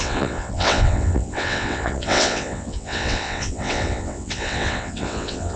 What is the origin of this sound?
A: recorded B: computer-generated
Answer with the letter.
B